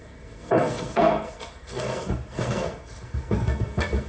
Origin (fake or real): fake